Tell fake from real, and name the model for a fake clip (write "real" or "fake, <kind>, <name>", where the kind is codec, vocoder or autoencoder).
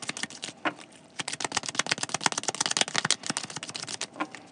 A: real